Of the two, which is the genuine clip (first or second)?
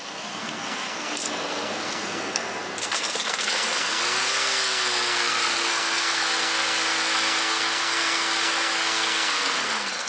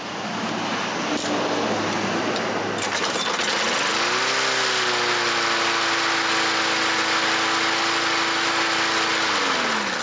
second